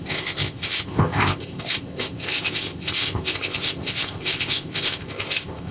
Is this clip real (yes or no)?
no